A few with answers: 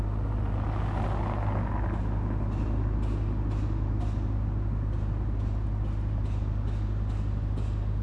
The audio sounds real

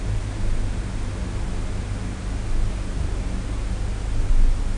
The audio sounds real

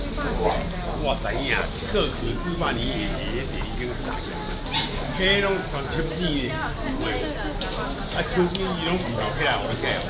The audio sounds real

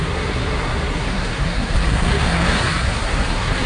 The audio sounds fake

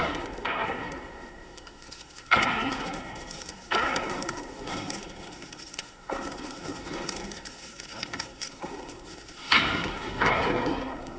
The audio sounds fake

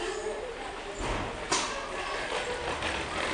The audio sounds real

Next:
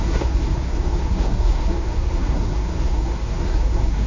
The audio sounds fake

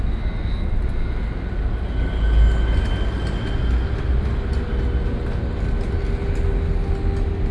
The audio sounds real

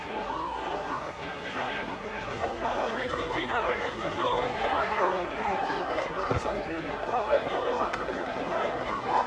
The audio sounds fake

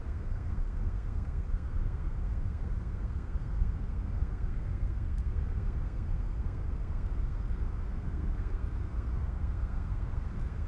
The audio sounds fake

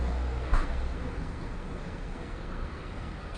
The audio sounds fake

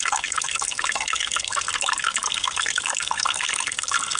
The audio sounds fake